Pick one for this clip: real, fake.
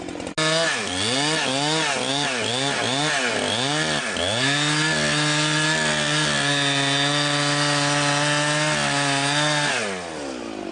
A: real